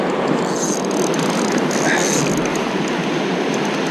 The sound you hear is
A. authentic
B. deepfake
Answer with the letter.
A